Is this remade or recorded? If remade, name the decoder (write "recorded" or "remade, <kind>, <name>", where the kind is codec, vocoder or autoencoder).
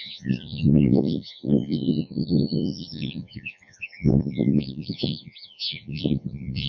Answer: remade, vocoder, Vocos